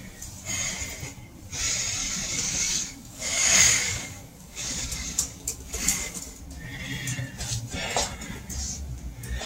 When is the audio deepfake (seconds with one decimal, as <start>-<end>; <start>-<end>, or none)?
2.0-6.2